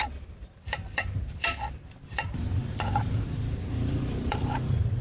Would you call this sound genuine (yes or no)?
no